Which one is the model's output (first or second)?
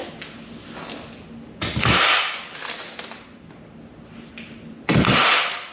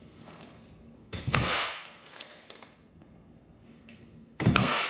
second